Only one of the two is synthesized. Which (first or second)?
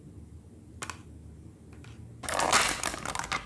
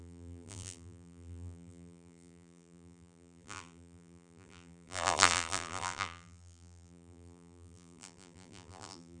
second